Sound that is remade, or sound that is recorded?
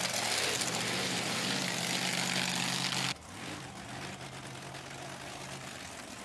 recorded